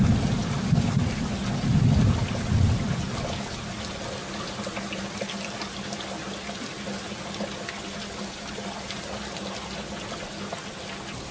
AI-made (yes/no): no